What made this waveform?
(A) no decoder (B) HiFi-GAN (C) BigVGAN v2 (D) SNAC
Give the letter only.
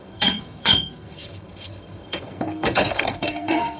D